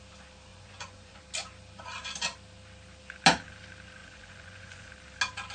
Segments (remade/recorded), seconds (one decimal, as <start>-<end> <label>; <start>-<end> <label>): 0.0-0.5 recorded; 0.5-1.2 remade; 1.2-4.0 recorded; 4.0-4.9 remade; 4.9-5.5 recorded